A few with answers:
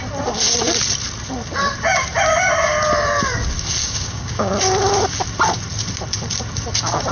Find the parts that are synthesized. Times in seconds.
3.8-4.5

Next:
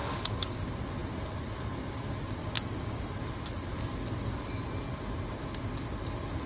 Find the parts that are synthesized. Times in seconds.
0.0-0.6; 2.4-3.0

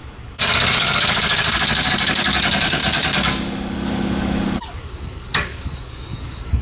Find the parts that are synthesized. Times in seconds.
0.0-6.6